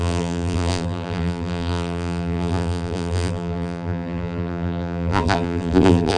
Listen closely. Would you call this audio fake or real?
fake